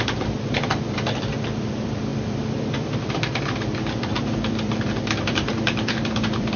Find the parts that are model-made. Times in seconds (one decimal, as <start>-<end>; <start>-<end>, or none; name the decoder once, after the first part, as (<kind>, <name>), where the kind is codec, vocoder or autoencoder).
0.0-6.6 (vocoder, BigVGAN v2)